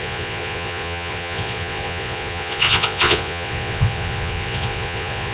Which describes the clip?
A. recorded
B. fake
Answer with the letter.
B